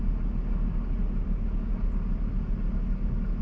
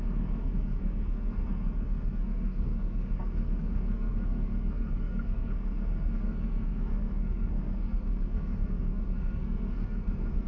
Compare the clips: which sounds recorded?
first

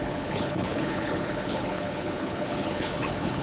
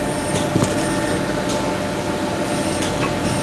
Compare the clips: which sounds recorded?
second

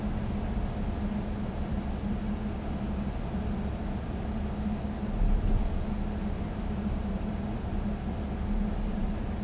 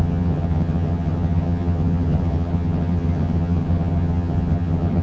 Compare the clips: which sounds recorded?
first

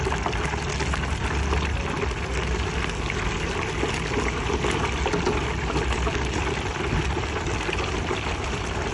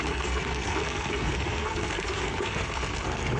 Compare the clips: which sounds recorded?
first